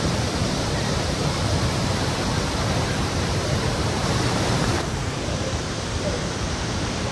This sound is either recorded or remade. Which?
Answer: remade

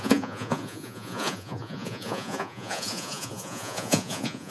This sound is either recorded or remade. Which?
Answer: remade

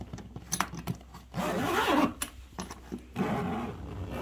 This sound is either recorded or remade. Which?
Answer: recorded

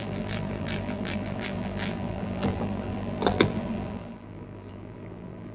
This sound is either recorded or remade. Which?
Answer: remade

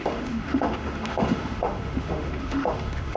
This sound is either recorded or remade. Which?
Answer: remade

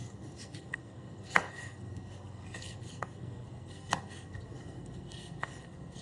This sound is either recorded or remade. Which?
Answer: remade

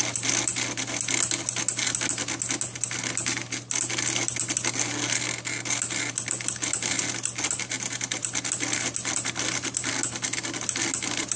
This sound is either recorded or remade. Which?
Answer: recorded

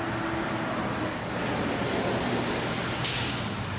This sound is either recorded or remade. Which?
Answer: recorded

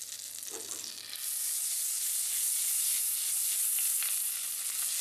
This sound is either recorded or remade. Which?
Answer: recorded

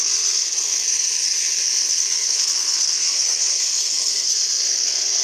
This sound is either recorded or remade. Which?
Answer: remade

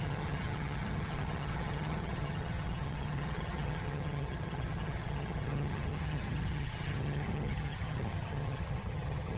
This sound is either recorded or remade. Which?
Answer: remade